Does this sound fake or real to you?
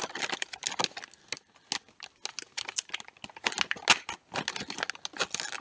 real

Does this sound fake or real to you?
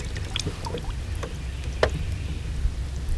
real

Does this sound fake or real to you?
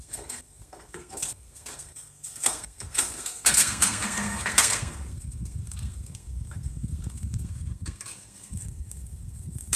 fake